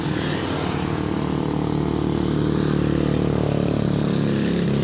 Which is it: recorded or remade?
recorded